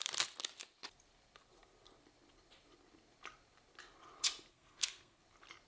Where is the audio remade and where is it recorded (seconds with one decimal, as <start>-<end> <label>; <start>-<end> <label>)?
0.0-4.5 recorded; 4.5-5.2 remade; 5.2-5.7 recorded